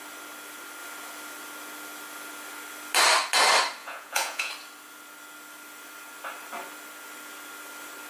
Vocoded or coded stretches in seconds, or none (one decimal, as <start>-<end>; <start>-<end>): 3.8-4.5